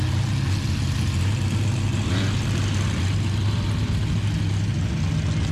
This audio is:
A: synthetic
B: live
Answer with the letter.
B